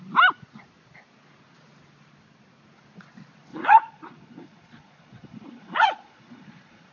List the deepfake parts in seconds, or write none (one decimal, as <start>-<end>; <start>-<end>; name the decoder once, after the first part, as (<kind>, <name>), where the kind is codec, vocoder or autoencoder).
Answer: 3.5-6.9 (vocoder, Vocos)